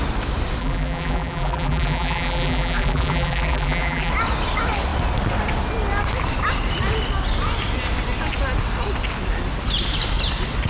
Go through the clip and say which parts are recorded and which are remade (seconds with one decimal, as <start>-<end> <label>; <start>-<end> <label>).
0.0-0.6 recorded; 0.6-4.1 remade; 4.1-10.7 recorded